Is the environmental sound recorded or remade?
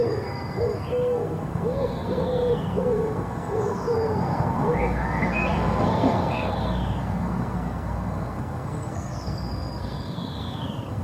remade